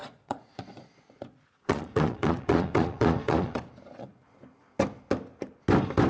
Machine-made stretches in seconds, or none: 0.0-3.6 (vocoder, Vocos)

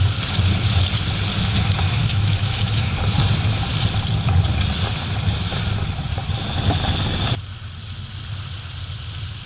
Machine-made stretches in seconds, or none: 2.0-2.9 (autoencoder, DAC-VAE)

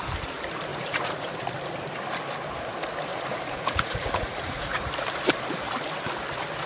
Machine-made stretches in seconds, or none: 0.7-1.4 (vocoder, Vocos); 3.1-4.9

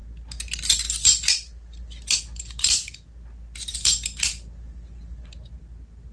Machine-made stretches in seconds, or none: none

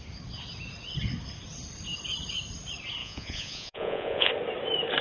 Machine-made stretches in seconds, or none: 3.0-4.3 (vocoder, Vocos)

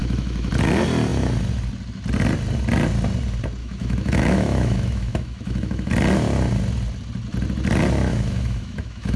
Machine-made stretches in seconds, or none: 0.0-0.5 (autoencoder, DAC-VAE); 3.6-5.9; 8.1-9.2

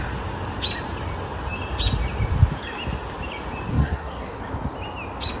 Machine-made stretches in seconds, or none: 3.7-4.4 (codec, SNAC)